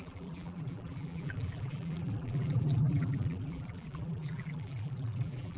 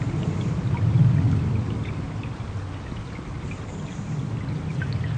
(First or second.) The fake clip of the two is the first